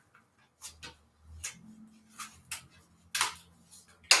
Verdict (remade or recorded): recorded